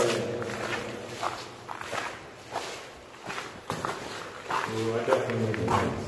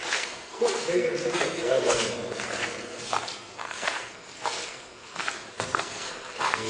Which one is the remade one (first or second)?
second